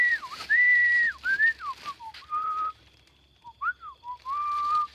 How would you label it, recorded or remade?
remade